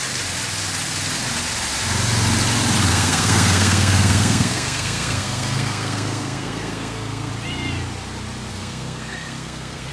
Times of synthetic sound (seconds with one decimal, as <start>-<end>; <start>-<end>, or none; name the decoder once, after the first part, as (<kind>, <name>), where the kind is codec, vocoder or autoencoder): 2.9-7.3 (codec, SNAC); 8.5-9.9